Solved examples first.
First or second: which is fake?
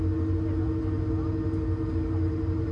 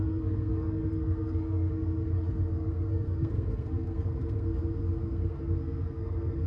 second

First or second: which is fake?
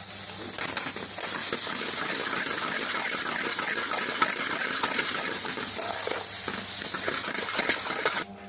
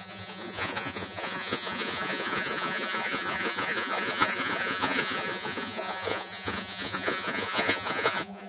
second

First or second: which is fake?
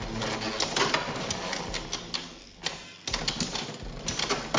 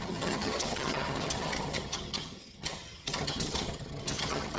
second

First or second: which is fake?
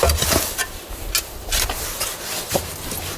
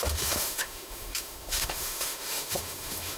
second